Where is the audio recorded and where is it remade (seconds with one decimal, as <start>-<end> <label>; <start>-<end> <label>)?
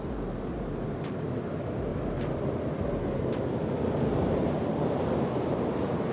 0.0-6.1 recorded